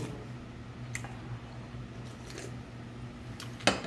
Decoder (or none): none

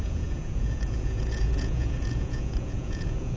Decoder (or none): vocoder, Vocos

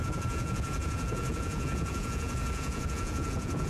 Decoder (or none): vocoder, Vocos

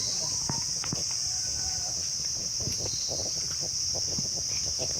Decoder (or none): none